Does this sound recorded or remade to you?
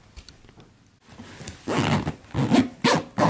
recorded